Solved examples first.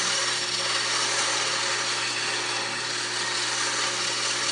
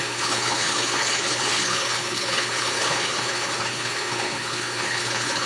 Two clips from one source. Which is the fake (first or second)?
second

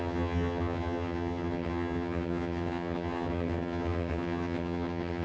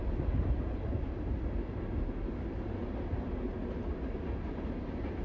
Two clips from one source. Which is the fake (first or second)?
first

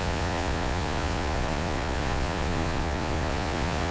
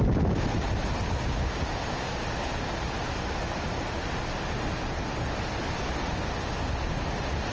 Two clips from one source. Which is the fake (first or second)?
first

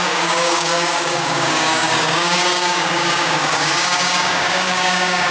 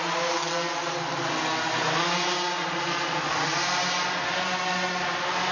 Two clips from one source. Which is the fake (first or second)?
first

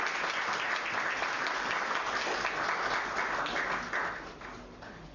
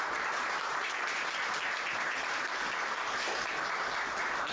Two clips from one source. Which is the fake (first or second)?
second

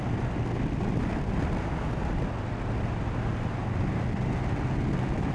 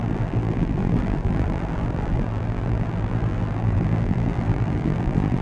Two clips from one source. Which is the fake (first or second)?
second